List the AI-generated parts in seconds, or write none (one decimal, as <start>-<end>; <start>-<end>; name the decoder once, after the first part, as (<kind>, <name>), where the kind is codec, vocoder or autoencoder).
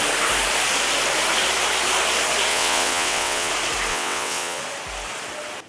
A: 2.5-3.5 (vocoder, WaveNeXt); 3.9-4.6